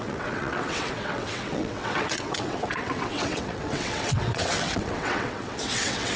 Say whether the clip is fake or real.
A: fake